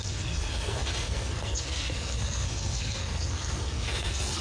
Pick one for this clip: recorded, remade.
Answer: remade